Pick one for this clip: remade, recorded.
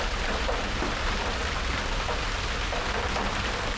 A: recorded